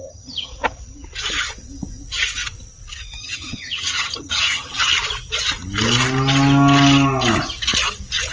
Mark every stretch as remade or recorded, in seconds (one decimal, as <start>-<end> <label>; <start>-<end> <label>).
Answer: 0.0-0.5 remade; 0.5-3.2 recorded; 3.2-4.9 remade; 4.9-8.3 recorded